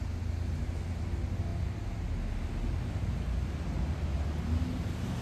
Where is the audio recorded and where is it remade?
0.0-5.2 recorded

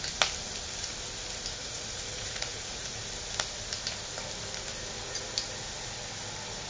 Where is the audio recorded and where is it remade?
0.0-1.6 recorded; 1.6-3.0 remade; 3.0-6.7 recorded

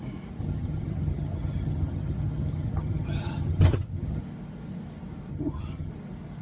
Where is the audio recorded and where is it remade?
0.0-0.4 recorded; 0.4-4.2 remade; 4.2-5.3 recorded; 5.3-5.9 remade; 5.9-6.4 recorded